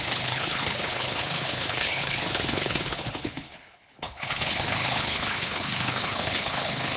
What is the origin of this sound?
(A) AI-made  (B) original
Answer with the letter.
A